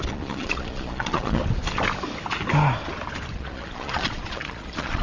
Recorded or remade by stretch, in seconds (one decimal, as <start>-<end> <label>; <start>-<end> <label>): 0.0-1.4 remade; 1.4-3.3 recorded; 3.3-5.0 remade